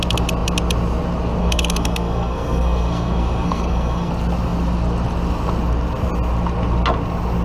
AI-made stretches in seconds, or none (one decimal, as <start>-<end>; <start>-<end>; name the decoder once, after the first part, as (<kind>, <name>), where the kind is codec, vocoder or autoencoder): 1.4-4.1 (codec, SNAC)